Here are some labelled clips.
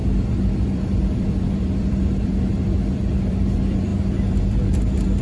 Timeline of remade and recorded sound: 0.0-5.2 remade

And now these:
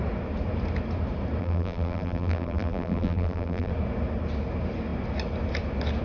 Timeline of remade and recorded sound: 0.0-1.4 recorded; 1.4-3.7 remade; 3.7-6.0 recorded

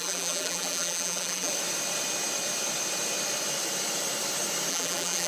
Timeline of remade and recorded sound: 0.0-1.5 remade; 1.5-4.7 recorded; 4.7-5.3 remade